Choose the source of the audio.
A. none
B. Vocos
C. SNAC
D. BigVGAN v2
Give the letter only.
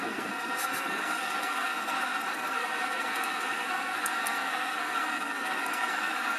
C